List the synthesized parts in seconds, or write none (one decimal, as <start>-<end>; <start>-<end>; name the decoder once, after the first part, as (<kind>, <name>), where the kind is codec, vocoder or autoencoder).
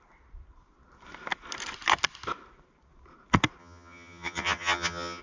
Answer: 3.6-5.2 (vocoder, HiFi-GAN)